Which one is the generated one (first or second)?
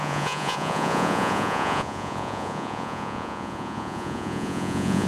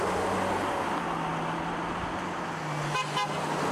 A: first